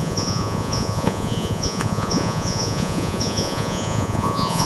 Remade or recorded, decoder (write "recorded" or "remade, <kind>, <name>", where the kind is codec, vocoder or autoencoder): remade, vocoder, Vocos